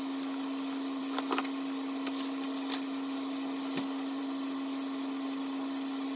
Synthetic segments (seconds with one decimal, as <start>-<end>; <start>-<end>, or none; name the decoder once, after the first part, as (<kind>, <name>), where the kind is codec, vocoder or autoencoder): none